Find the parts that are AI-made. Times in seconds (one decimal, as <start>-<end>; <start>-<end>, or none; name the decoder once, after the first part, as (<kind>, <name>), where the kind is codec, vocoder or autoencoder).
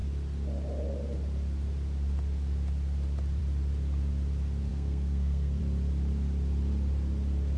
4.7-5.6 (codec, SNAC)